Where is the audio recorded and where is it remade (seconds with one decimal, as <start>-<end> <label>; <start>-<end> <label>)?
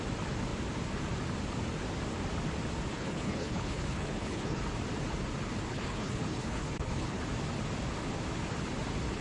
0.0-2.9 recorded; 2.9-4.6 remade; 4.6-5.7 recorded; 5.7-7.2 remade; 7.2-9.2 recorded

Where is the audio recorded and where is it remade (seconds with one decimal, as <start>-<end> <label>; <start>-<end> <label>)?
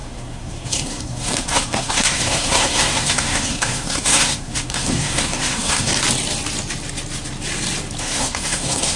0.0-5.9 remade; 5.9-8.0 recorded; 8.0-9.0 remade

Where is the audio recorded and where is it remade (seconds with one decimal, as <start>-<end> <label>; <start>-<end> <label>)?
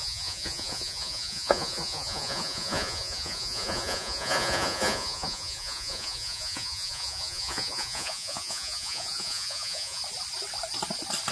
0.0-10.0 remade; 10.0-11.3 recorded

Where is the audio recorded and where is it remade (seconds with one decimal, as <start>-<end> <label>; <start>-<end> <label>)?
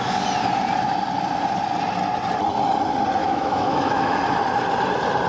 0.0-3.2 recorded; 3.2-4.2 remade; 4.2-5.3 recorded